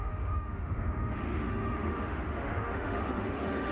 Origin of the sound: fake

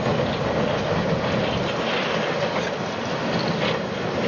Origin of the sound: real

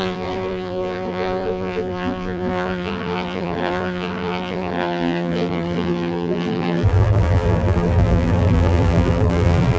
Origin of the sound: fake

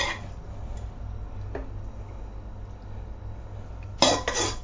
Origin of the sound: real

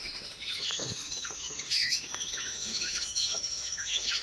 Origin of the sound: fake